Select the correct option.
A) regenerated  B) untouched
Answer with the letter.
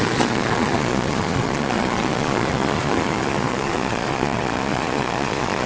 A